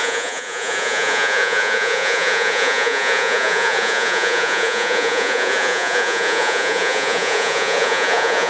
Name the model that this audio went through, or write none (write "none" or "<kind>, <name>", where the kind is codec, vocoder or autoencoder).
vocoder, Vocos